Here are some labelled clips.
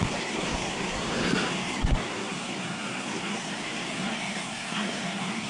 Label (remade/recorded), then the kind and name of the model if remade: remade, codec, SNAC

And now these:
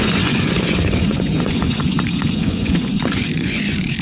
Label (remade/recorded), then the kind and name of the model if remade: remade, vocoder, Vocos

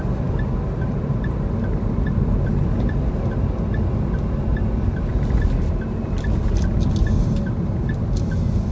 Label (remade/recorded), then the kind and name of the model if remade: recorded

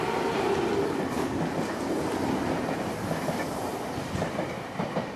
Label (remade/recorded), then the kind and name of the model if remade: recorded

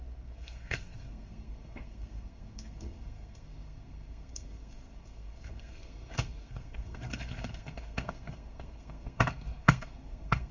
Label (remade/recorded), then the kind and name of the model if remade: remade, codec, SNAC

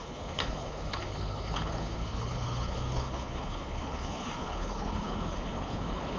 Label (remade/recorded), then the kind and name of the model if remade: remade, codec, HILCodec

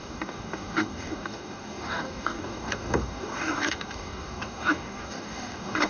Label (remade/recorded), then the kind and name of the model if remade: remade, codec, DAC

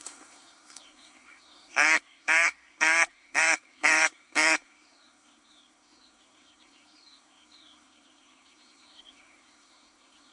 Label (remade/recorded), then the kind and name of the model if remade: remade, codec, SNAC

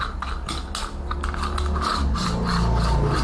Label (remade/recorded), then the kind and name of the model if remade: recorded